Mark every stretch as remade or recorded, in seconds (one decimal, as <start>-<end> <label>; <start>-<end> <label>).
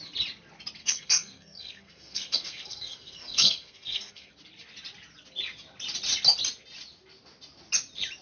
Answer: 0.0-0.8 recorded; 0.8-4.3 remade; 4.3-8.2 recorded